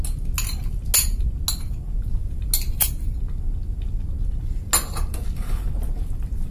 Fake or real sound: real